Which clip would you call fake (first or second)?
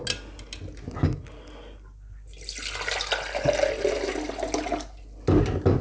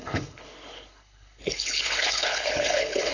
second